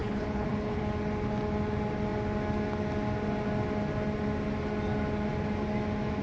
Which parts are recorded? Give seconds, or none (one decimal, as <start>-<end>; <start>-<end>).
0.8-6.2